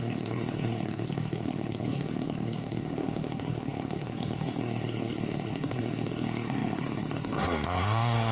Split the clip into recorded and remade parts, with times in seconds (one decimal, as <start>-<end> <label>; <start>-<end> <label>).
0.0-8.3 remade